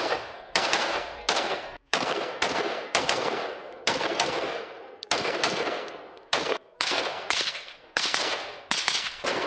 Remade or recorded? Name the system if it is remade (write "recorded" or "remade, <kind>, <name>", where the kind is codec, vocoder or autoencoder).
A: remade, codec, SNAC